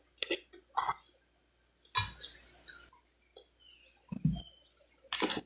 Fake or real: real